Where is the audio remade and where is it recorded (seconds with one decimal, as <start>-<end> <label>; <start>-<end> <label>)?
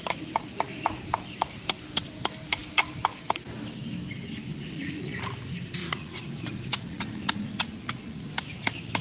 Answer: 0.0-4.5 recorded; 4.5-5.2 remade; 5.2-5.8 recorded; 5.8-8.3 remade; 8.3-9.0 recorded